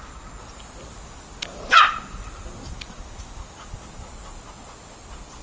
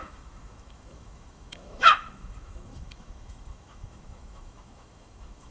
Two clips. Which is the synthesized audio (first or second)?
second